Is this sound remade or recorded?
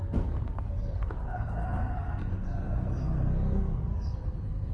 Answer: remade